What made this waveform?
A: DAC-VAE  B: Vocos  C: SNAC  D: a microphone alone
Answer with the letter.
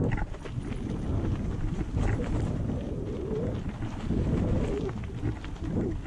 D